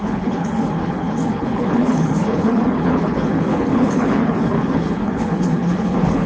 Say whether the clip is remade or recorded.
remade